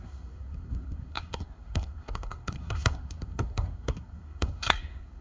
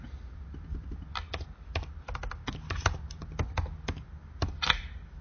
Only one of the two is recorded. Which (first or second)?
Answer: second